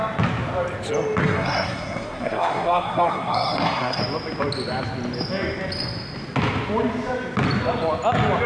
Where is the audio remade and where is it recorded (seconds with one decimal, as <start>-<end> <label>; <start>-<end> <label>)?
0.0-1.2 recorded; 1.2-4.0 remade; 4.0-8.5 recorded